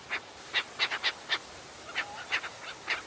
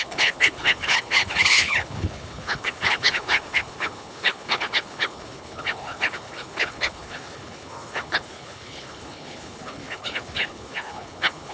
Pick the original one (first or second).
first